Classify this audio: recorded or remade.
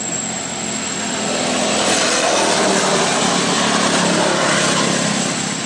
recorded